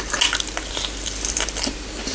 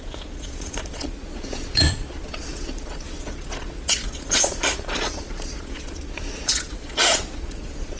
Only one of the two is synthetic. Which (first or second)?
second